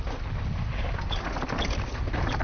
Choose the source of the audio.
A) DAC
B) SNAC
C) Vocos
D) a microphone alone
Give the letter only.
D